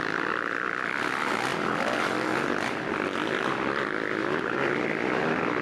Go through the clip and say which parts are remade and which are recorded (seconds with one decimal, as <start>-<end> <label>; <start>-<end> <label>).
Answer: 0.0-5.6 recorded

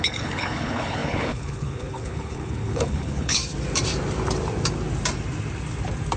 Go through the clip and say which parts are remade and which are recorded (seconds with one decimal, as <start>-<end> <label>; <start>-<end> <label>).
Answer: 0.0-3.4 remade; 3.4-6.2 recorded

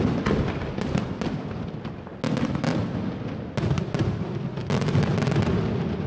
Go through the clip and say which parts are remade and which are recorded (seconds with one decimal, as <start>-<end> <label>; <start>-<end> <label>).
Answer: 0.0-6.1 recorded

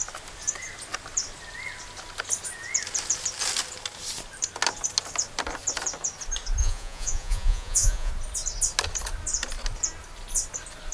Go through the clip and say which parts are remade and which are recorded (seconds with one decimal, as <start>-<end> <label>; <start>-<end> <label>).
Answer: 0.0-6.6 recorded; 6.6-8.1 remade; 8.1-10.9 recorded